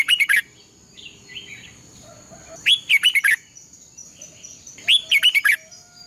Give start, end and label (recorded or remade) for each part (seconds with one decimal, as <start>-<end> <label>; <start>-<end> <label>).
0.0-6.1 recorded